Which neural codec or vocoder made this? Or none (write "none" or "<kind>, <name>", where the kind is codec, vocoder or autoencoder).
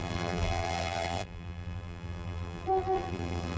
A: vocoder, BigVGAN v2